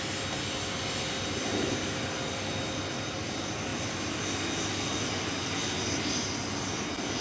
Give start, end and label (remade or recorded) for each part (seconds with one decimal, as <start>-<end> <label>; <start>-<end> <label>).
0.0-7.2 recorded